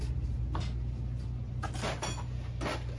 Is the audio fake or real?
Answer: real